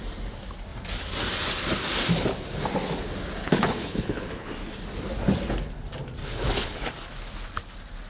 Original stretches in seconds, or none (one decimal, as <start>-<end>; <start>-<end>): 0.0-3.4; 4.5-6.2; 6.9-8.1